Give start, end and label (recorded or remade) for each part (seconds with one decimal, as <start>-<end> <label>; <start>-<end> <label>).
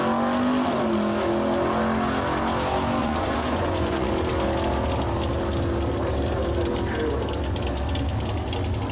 0.0-3.0 recorded; 3.0-4.1 remade; 4.1-8.9 recorded